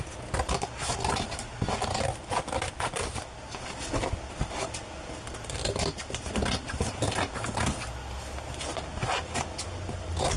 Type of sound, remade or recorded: recorded